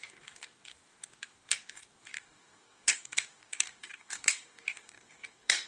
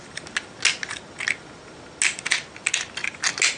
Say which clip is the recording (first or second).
second